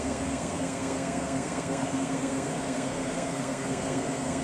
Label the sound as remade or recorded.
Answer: remade